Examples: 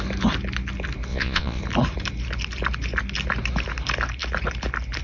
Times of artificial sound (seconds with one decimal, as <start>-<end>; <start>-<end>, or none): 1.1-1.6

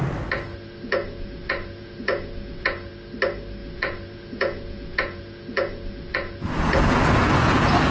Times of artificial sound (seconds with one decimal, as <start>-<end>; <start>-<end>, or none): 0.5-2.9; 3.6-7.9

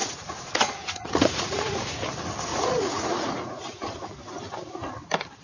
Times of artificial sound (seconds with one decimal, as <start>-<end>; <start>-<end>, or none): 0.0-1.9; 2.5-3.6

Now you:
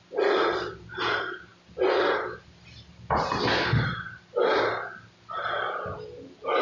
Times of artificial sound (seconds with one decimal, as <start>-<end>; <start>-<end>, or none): none

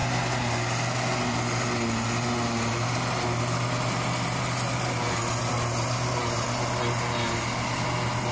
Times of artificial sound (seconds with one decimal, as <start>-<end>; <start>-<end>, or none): none